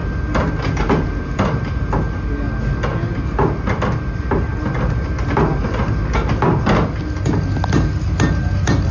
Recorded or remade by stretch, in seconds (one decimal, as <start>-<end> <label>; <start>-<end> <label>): 0.0-8.9 recorded